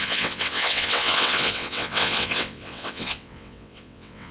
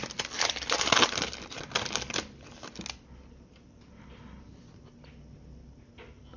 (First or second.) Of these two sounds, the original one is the second